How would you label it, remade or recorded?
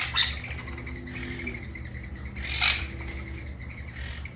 recorded